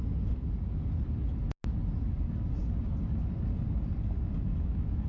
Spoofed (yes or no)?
no